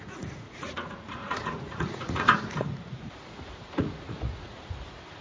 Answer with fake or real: fake